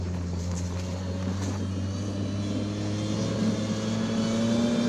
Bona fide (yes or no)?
yes